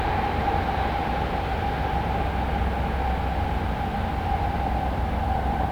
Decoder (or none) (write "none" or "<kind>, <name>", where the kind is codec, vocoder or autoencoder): none